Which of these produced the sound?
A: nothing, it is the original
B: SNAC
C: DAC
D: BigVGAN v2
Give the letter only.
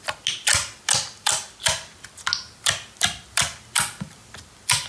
A